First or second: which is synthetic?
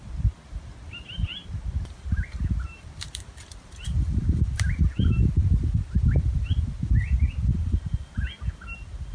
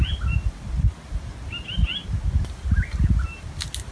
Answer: first